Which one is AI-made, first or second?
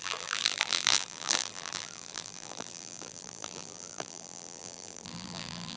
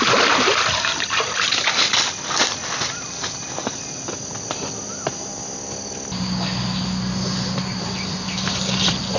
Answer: first